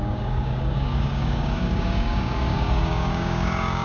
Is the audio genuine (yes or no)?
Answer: no